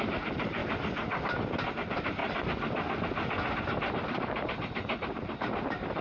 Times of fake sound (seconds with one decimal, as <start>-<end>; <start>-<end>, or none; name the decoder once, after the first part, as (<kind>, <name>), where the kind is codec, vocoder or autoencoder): 0.0-0.6 (vocoder, BigVGAN v2); 1.7-2.2; 3.8-6.0